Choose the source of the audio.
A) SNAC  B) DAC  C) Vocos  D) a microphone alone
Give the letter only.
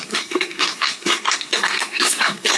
A